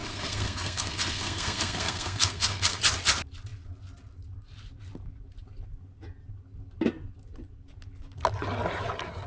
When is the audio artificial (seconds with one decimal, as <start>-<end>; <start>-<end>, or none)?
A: 0.0-2.8